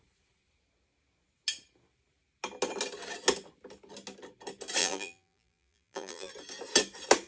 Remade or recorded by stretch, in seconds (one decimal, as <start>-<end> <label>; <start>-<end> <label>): 0.0-4.8 recorded; 4.8-6.3 remade; 6.3-7.3 recorded